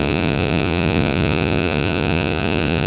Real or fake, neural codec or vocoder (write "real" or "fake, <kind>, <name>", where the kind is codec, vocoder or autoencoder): fake, vocoder, Vocos